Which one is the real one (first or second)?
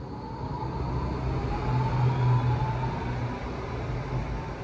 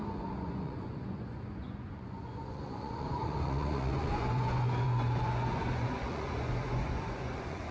first